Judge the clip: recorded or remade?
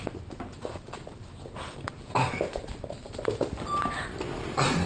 recorded